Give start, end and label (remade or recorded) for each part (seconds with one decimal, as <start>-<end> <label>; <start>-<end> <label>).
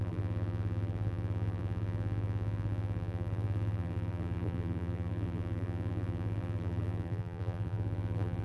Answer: 0.0-8.4 remade